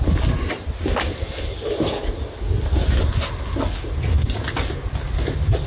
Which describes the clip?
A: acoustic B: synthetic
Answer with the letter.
A